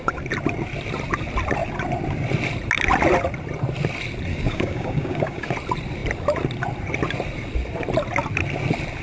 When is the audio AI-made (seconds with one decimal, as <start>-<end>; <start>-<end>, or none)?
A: 4.3-5.5